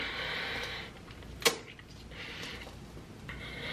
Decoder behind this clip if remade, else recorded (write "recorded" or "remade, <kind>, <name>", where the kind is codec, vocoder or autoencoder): recorded